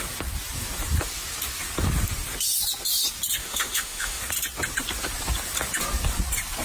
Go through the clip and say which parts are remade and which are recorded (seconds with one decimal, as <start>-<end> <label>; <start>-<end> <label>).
0.0-3.4 recorded; 3.4-4.2 remade; 4.2-6.6 recorded